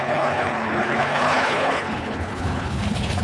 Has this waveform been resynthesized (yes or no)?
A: yes